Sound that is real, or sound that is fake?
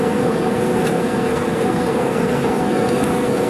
fake